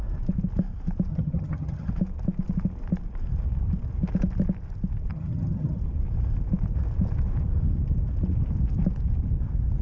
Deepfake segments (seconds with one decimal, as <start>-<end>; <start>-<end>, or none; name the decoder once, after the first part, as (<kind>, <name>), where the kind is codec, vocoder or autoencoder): 1.1-1.9 (vocoder, HiFi-GAN); 5.1-5.8